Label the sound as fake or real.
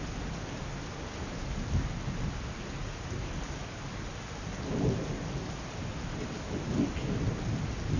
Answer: real